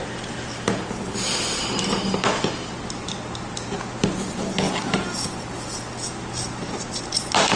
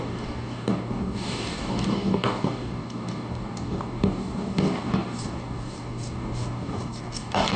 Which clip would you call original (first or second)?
first